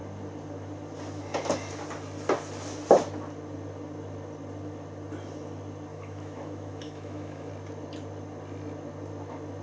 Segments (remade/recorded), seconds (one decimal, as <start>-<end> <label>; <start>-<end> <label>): 0.0-5.9 recorded; 5.9-7.5 remade; 7.5-9.6 recorded